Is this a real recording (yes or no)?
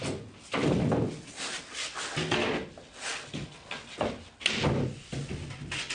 yes